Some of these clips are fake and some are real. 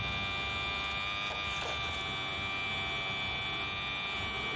real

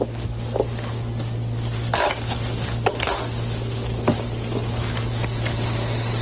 real